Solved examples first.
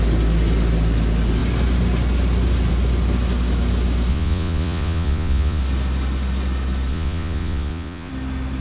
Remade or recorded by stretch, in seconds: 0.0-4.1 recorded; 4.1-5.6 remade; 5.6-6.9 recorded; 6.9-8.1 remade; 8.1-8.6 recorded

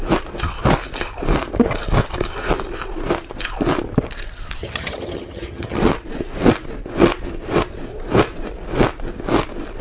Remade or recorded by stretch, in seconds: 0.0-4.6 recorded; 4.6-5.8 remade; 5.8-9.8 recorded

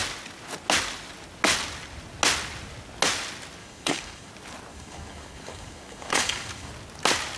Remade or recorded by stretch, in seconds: 0.0-3.6 recorded; 3.6-4.3 remade; 4.3-4.7 recorded; 4.7-6.7 remade; 6.7-7.4 recorded

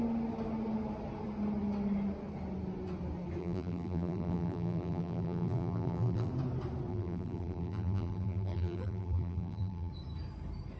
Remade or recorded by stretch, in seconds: 0.0-3.4 recorded; 3.4-6.3 remade; 6.3-6.9 recorded; 6.9-9.9 remade; 9.9-10.8 recorded